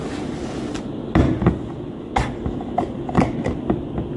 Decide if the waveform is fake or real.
real